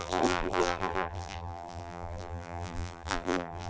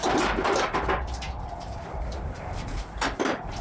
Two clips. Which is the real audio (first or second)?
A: second